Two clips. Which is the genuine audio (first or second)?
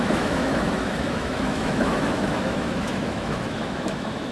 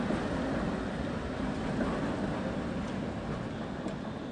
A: second